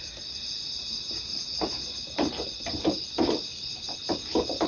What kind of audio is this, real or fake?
real